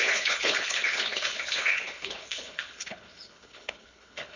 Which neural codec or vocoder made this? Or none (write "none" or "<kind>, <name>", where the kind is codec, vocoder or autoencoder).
codec, HILCodec